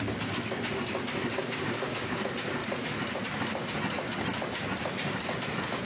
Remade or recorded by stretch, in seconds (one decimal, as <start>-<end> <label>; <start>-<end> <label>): 0.0-1.4 recorded; 1.4-2.2 remade; 2.2-5.9 recorded